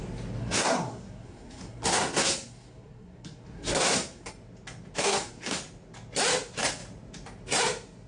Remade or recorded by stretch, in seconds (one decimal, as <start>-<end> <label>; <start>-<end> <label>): 0.0-0.4 recorded; 0.4-4.3 remade; 4.3-5.0 recorded; 5.0-5.6 remade; 5.6-8.1 recorded